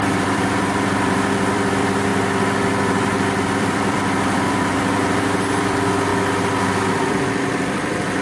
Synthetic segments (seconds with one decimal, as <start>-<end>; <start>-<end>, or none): 0.0-6.1; 6.9-8.2

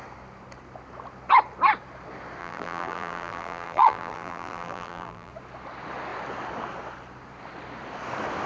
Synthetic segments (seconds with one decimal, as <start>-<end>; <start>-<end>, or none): 2.4-5.3